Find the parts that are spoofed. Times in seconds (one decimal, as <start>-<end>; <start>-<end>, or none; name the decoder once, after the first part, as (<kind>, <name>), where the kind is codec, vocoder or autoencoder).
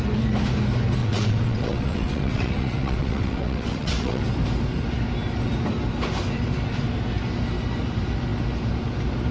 1.0-4.2 (vocoder, WaveNeXt)